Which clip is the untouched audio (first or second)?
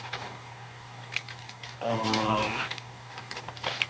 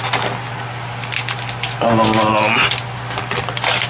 second